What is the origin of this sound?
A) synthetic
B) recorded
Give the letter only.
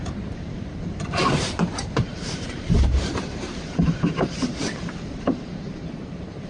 A